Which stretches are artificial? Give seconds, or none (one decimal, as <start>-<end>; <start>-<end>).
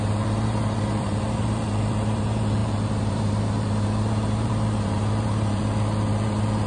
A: 0.0-6.7